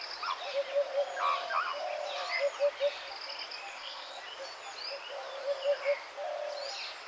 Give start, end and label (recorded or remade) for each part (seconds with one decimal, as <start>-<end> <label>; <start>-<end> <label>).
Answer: 0.0-3.7 recorded; 3.7-4.2 remade; 4.2-7.1 recorded

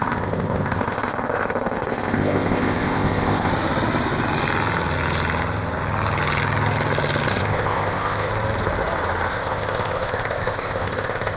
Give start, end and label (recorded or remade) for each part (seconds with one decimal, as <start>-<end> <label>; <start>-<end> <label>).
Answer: 0.0-3.5 remade; 3.5-7.3 recorded; 7.3-8.3 remade; 8.3-9.3 recorded; 9.3-11.4 remade

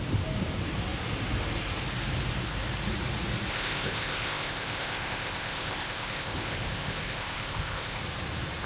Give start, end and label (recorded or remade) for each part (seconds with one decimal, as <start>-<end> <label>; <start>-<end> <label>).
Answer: 0.0-3.5 recorded; 3.5-8.0 remade; 8.0-8.7 recorded

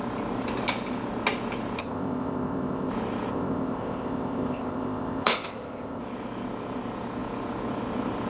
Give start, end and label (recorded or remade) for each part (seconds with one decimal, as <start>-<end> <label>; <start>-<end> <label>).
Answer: 0.0-1.8 recorded; 1.8-2.9 remade; 2.9-3.3 recorded; 3.3-6.0 remade; 6.0-8.3 recorded

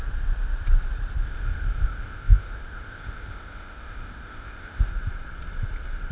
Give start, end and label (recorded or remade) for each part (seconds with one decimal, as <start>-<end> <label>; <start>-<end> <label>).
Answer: 0.0-1.2 recorded; 1.2-4.9 remade; 4.9-6.1 recorded

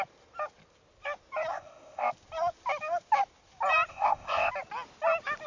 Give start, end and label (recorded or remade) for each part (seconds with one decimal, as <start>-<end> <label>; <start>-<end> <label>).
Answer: 0.0-1.5 recorded; 1.5-2.1 remade; 2.1-3.9 recorded; 3.9-4.5 remade; 4.5-5.5 recorded

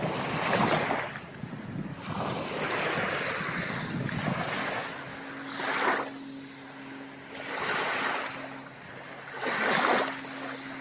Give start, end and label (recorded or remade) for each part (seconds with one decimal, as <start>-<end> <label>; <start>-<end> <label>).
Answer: 0.0-10.8 recorded